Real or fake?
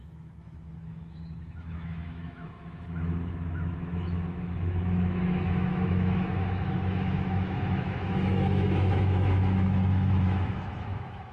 fake